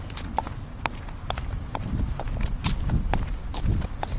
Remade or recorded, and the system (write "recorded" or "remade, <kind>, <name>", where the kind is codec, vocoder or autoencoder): recorded